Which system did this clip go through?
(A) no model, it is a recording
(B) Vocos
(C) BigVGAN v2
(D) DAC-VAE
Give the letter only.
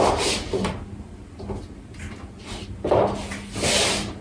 A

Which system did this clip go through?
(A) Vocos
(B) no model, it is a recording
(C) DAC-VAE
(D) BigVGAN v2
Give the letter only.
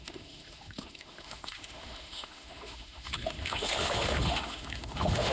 C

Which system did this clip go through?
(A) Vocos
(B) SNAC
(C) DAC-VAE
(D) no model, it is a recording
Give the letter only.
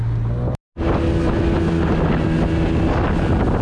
D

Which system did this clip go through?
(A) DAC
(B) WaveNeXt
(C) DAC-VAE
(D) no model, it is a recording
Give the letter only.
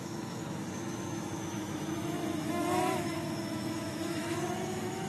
C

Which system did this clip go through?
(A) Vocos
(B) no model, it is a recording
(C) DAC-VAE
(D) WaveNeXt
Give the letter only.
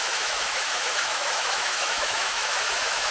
C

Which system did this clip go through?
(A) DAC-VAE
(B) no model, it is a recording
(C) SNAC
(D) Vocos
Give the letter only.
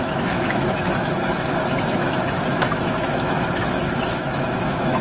A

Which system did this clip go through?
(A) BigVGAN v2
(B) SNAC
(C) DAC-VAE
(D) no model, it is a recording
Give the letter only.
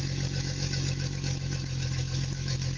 C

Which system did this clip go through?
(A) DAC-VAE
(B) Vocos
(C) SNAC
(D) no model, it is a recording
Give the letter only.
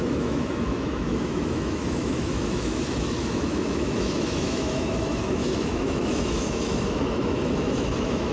A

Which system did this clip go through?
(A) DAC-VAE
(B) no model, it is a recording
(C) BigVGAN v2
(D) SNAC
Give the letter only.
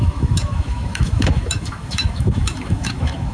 A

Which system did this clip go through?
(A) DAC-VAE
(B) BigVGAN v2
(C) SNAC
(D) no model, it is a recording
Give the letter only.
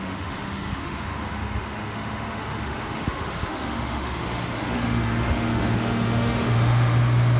A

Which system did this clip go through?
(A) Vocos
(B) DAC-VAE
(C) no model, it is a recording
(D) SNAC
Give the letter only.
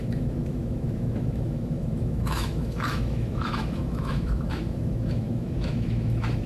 B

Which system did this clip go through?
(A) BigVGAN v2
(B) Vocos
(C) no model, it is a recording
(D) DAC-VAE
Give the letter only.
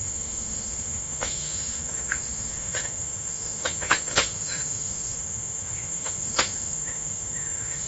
D